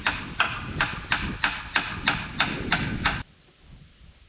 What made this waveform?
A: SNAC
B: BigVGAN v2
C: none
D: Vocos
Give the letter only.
C